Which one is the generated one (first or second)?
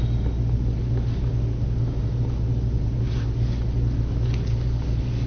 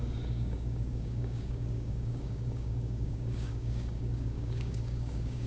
second